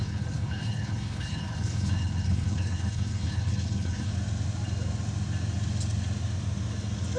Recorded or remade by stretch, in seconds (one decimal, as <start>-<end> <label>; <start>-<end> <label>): 0.0-4.1 remade; 4.1-7.2 recorded